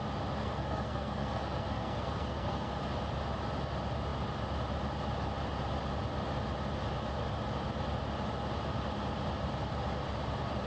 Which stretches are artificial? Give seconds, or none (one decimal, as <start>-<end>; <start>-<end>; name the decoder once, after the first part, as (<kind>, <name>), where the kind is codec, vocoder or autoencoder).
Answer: 0.4-2.7 (codec, SNAC)